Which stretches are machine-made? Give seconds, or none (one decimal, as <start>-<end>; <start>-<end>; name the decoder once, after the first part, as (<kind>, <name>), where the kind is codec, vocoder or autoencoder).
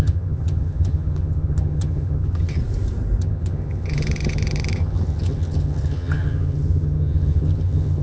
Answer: 0.0-2.6 (vocoder, HiFi-GAN); 3.2-8.0